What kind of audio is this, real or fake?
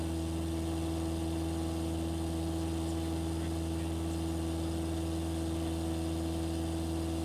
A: real